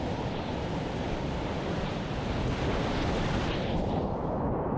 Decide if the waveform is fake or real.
fake